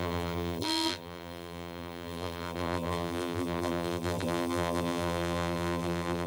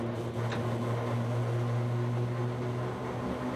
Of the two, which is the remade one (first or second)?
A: first